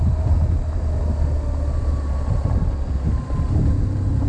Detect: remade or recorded recorded